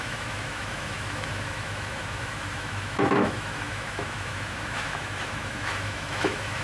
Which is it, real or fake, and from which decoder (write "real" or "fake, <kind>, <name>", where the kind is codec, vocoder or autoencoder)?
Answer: fake, autoencoder, DAC-VAE